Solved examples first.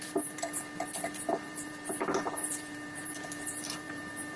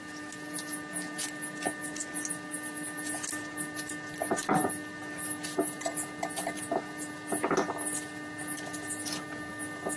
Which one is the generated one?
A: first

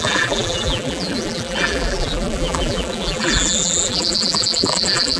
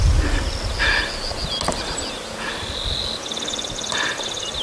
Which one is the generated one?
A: first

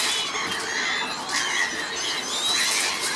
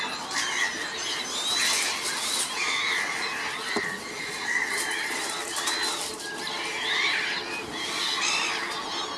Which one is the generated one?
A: second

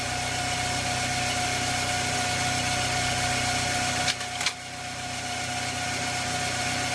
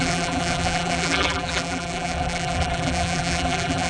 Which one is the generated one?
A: second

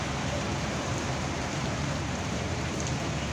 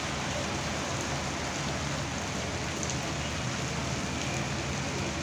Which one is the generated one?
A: first